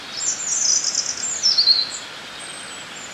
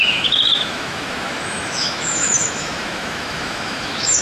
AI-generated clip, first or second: second